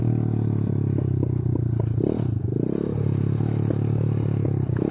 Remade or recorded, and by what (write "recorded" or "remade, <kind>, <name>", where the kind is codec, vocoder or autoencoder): recorded